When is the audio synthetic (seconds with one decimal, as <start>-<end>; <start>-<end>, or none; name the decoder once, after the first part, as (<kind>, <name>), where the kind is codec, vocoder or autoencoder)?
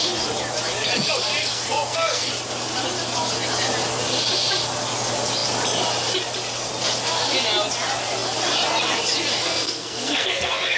1.4-2.3 (codec, SNAC); 9.4-10.8